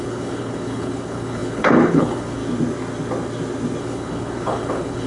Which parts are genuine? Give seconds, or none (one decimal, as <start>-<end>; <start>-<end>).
2.4-3.8